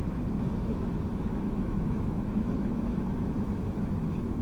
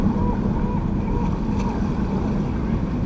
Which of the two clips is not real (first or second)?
first